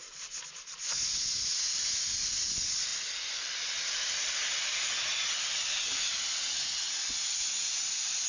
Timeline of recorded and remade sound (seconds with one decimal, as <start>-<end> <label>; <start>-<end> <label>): 0.0-8.3 recorded